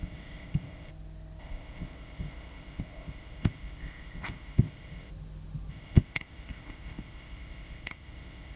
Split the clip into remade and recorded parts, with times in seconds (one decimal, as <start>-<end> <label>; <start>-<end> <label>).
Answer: 0.0-0.9 remade; 0.9-1.4 recorded; 1.4-5.1 remade; 5.1-5.7 recorded; 5.7-8.6 remade

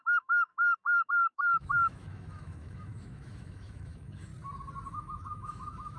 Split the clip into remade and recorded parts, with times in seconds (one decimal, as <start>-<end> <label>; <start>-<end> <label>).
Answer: 0.0-0.5 remade; 0.5-1.1 recorded; 1.1-4.3 remade; 4.3-4.9 recorded; 4.9-6.0 remade

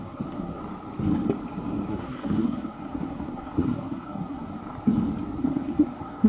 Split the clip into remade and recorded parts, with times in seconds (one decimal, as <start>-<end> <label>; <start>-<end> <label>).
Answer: 0.0-0.6 remade; 0.6-1.9 recorded; 1.9-4.5 remade; 4.5-5.4 recorded; 5.4-6.3 remade

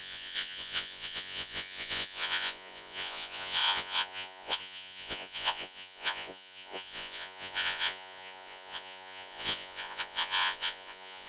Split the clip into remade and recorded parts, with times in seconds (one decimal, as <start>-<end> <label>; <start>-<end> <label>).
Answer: 0.0-11.3 remade

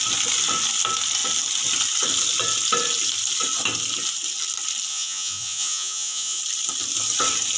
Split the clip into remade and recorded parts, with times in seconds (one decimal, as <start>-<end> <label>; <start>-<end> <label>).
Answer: 0.0-4.9 recorded; 4.9-6.4 remade; 6.4-7.6 recorded

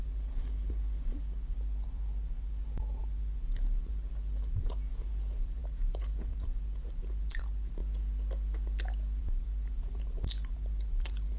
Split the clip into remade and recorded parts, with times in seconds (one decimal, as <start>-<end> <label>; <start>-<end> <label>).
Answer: 0.0-7.8 remade; 7.8-9.2 recorded; 9.2-11.4 remade